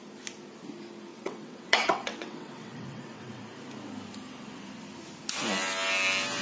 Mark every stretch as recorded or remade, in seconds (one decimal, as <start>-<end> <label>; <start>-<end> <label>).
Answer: 0.0-1.1 recorded; 1.1-3.4 remade; 3.4-6.4 recorded